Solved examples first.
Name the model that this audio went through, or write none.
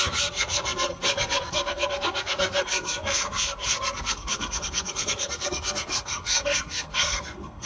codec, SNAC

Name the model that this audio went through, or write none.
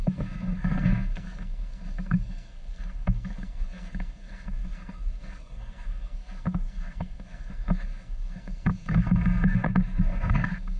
codec, SNAC